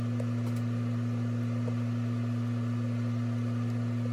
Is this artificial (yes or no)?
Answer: no